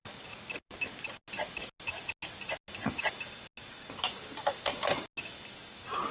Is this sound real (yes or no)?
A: yes